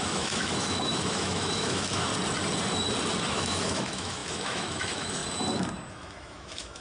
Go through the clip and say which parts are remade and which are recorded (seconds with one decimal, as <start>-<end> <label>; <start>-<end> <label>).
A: 0.0-2.1 remade; 2.1-3.3 recorded; 3.3-5.2 remade; 5.2-5.9 recorded; 5.9-6.8 remade